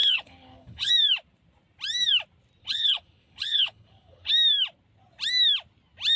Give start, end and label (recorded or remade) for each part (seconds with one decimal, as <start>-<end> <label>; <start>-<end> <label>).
0.0-0.9 remade; 0.9-2.6 recorded; 2.6-4.3 remade; 4.3-6.2 recorded